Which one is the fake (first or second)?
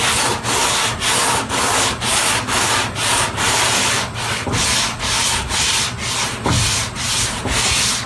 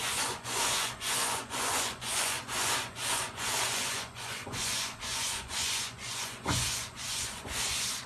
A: second